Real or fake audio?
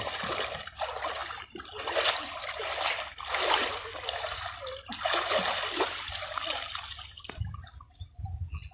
real